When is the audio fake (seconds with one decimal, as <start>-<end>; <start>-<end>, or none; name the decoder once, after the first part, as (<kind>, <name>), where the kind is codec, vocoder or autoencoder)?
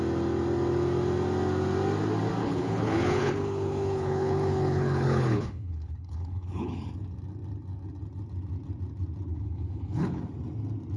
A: 2.4-6.9 (codec, HILCodec); 9.3-10.2